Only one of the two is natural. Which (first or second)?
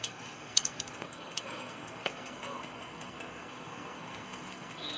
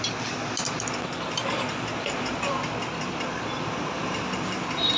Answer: second